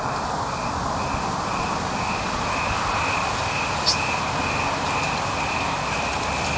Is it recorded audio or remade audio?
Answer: recorded